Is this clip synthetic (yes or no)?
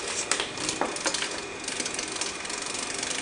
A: no